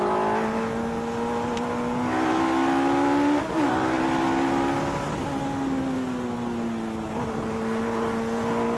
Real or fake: real